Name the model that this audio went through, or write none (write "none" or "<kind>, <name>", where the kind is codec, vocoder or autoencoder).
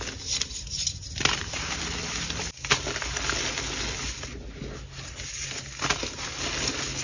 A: none